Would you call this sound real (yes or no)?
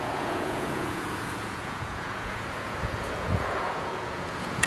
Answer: no